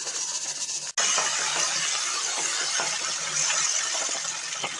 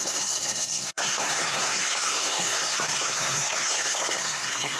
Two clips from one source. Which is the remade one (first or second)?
second